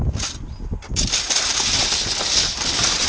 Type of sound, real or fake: real